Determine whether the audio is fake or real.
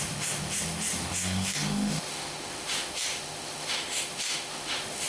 fake